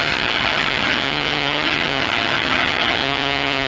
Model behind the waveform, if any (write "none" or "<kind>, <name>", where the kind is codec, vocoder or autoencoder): vocoder, HiFi-GAN